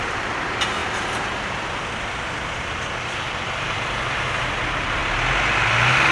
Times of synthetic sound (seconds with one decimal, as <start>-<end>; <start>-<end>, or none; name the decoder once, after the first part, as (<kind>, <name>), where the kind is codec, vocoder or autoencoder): none